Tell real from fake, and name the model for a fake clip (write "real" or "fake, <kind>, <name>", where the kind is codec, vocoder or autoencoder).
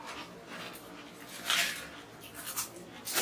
real